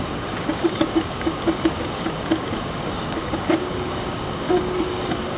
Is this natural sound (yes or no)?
no